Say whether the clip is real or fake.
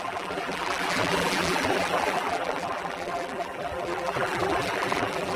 fake